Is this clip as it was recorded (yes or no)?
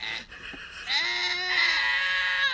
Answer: yes